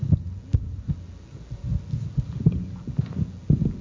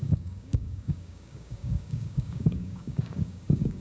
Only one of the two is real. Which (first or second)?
first